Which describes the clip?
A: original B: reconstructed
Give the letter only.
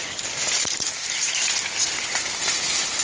A